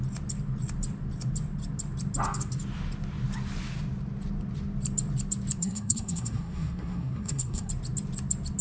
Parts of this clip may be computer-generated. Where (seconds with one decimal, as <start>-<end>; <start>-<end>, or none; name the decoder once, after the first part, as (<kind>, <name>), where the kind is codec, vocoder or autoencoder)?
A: 5.6-7.7 (codec, SNAC)